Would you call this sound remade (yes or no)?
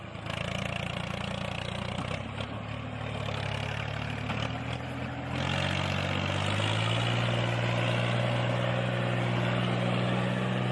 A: no